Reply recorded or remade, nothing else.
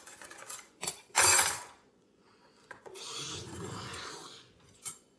remade